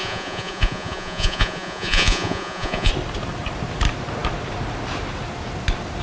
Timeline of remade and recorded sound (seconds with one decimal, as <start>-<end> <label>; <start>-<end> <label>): 0.0-2.9 remade; 2.9-6.0 recorded